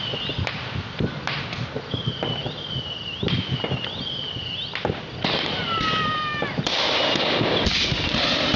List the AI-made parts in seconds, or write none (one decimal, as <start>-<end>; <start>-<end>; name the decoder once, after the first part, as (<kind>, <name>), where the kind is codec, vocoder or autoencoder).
none